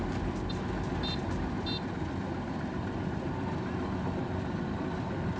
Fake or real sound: fake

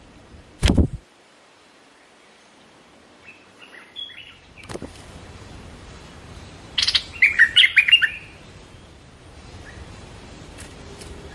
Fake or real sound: fake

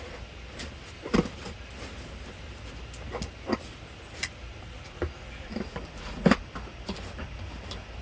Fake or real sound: real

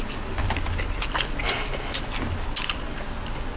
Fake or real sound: real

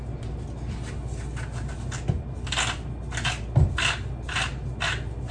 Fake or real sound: real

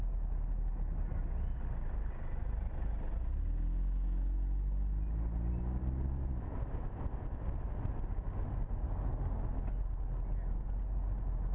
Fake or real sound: real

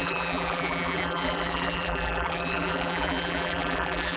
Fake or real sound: fake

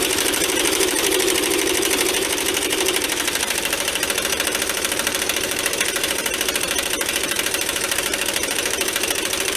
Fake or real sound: fake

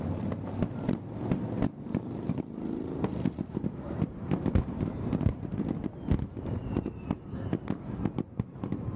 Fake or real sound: fake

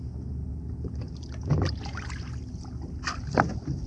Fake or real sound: real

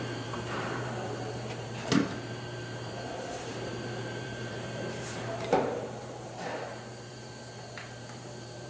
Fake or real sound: fake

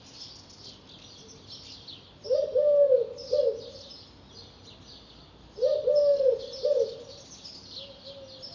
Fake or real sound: real